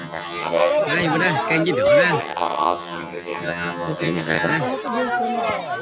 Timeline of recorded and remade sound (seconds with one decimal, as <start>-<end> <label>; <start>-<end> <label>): 0.0-0.7 remade; 0.7-2.2 recorded; 2.2-4.5 remade; 4.5-5.8 recorded

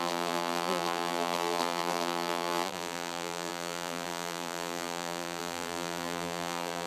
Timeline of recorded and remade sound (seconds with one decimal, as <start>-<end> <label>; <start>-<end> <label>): 0.0-6.9 remade

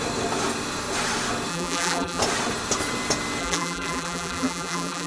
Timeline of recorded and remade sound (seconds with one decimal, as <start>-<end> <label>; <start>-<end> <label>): 0.0-1.5 recorded; 1.5-2.2 remade; 2.2-3.4 recorded; 3.4-5.1 remade

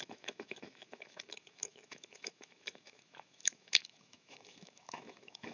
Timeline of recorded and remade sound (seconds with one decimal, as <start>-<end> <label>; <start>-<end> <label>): 0.0-5.5 remade